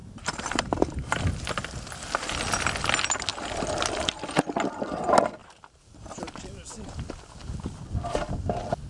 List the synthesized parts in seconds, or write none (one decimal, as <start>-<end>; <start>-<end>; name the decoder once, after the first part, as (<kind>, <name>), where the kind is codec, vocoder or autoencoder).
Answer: 0.0-1.2 (vocoder, BigVGAN v2); 5.4-6.2